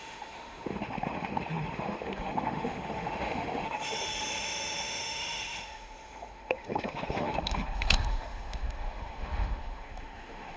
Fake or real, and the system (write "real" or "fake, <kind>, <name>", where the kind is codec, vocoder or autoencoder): fake, autoencoder, DAC-VAE